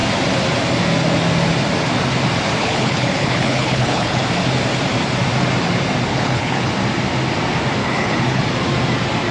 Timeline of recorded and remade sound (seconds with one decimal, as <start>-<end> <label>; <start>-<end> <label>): 0.0-2.6 recorded; 2.6-4.2 remade; 4.2-6.1 recorded; 6.1-6.7 remade; 6.7-7.8 recorded; 7.8-8.4 remade; 8.4-9.3 recorded